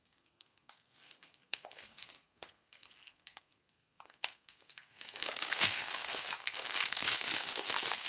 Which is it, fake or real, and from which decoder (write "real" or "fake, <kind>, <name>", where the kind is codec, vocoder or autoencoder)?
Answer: fake, codec, SNAC